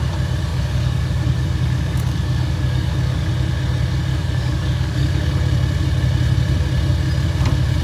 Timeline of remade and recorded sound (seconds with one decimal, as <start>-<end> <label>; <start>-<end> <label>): 0.0-0.5 recorded; 0.5-3.3 remade; 3.3-4.1 recorded; 4.1-5.3 remade; 5.3-7.8 recorded